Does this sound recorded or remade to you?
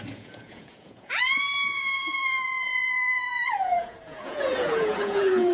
remade